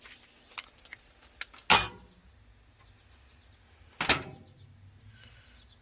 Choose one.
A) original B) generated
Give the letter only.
A